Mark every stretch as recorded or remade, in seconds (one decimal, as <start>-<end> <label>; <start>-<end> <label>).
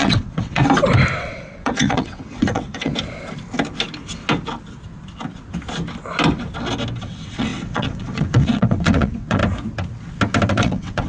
0.0-0.6 remade; 0.6-1.2 recorded; 1.2-2.9 remade; 2.9-7.0 recorded; 7.0-9.4 remade; 9.4-10.5 recorded; 10.5-11.1 remade